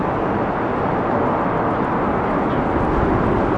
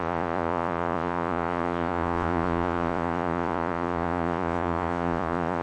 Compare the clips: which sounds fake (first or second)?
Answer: second